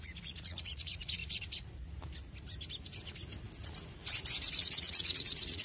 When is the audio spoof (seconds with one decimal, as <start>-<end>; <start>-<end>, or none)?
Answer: 0.0-1.2; 4.6-5.6